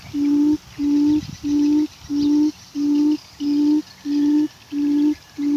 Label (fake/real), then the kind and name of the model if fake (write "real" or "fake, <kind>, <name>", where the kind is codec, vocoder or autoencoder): real